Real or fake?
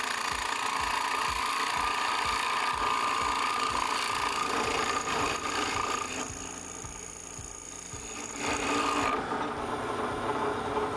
real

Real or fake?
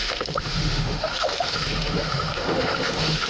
fake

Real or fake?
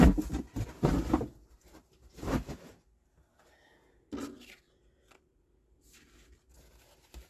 real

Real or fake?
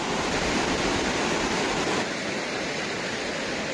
real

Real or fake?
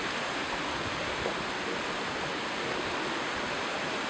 real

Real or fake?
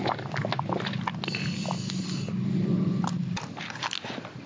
real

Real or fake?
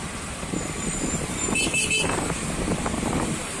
real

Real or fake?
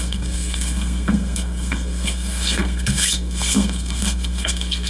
fake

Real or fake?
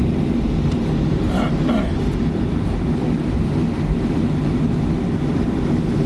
real